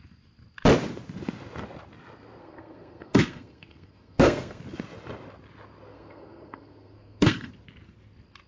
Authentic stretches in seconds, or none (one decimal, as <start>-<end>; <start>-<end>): 0.0-2.4; 4.6-5.9; 7.5-8.5